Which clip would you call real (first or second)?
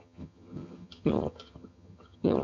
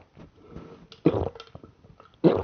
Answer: second